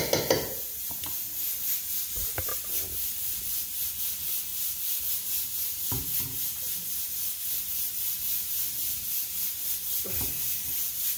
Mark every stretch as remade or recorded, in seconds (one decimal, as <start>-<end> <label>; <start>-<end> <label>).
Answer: 0.0-11.2 recorded